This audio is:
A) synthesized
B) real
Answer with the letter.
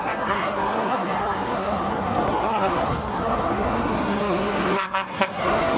A